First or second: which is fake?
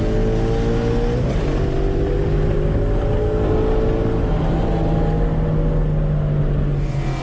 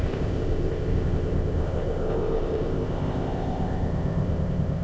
second